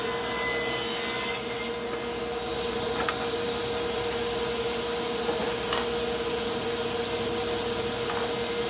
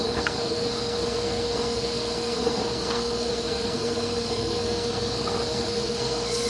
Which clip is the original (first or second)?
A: first